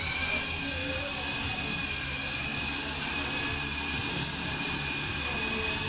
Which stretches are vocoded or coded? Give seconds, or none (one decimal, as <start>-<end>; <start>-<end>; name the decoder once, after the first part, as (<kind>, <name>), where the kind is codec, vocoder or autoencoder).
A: none